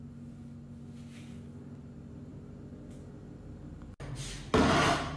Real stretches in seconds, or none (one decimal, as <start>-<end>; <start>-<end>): 0.0-5.2